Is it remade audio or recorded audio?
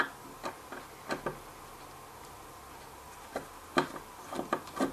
recorded